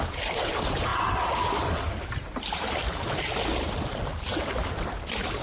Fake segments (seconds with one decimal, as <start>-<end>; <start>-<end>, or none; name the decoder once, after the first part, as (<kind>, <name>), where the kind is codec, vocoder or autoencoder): none